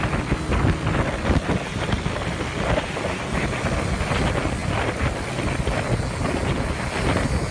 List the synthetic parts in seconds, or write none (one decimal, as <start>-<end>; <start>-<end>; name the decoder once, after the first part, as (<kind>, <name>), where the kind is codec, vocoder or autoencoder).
none